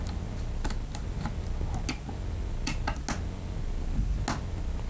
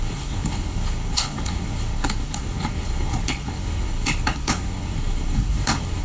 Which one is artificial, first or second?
second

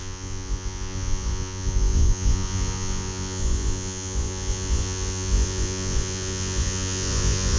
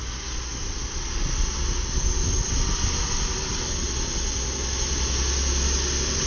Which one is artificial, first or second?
first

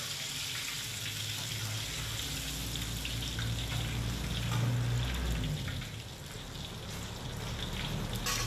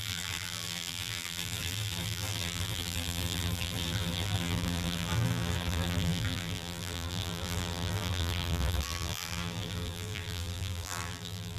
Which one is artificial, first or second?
second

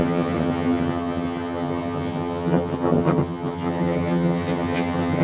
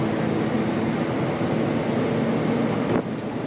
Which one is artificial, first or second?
first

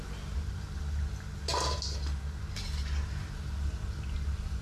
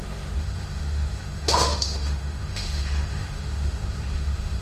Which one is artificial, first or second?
second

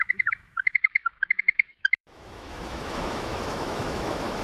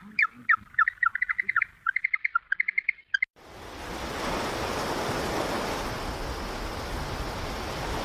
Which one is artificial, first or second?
first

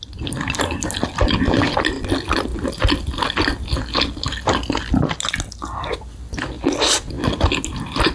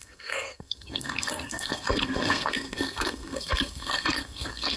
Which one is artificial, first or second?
second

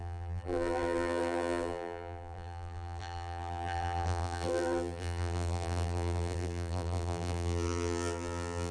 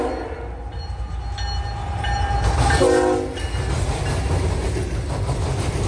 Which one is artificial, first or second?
first